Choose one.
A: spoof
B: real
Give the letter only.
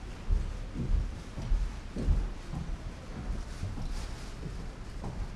B